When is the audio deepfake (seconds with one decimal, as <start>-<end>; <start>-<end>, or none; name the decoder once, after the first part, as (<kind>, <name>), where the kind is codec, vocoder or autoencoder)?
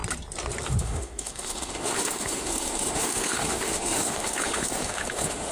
0.7-5.5 (autoencoder, DAC-VAE)